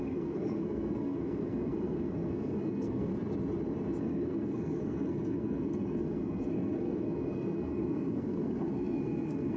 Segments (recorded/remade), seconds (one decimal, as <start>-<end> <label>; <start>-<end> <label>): 0.0-3.1 remade; 3.1-4.0 recorded; 4.0-9.6 remade